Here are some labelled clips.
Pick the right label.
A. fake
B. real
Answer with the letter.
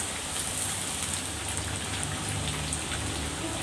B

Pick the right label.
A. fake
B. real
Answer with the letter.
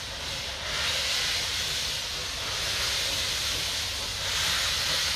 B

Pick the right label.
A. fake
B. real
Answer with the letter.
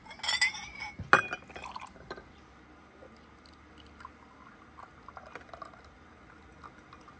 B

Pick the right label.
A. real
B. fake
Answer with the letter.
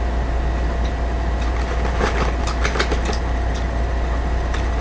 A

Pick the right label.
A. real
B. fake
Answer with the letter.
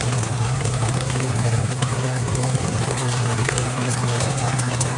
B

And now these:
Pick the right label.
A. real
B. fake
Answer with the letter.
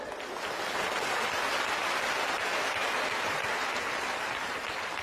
A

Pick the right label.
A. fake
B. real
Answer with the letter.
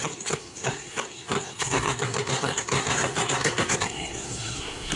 A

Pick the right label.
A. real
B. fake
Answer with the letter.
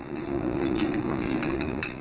B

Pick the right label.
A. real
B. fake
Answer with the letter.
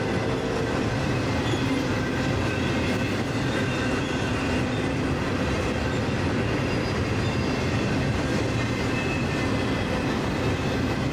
A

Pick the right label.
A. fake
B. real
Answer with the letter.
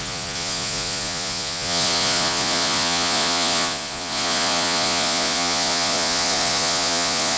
A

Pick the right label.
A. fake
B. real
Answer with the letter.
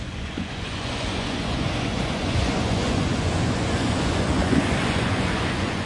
A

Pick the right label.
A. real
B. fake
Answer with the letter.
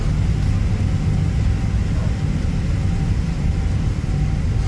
A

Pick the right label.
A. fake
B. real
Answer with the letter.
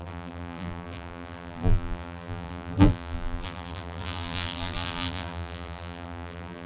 A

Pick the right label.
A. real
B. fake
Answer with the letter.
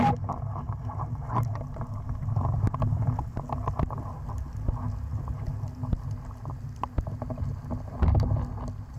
A